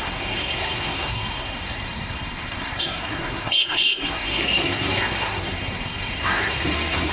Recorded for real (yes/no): no